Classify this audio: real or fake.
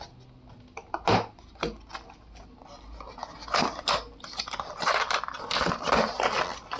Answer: real